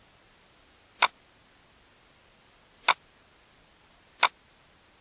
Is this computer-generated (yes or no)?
no